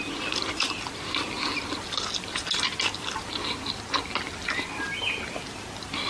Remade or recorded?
recorded